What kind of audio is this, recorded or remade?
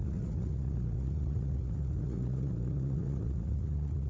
remade